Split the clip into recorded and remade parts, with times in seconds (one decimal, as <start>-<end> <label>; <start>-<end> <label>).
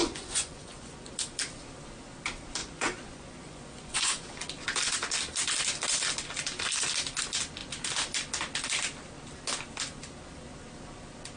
0.0-1.1 remade; 1.1-2.6 recorded; 2.6-4.3 remade; 4.3-11.4 recorded